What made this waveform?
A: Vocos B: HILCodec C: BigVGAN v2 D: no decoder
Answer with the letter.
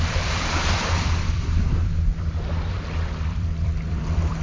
C